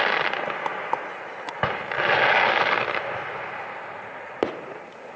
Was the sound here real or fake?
real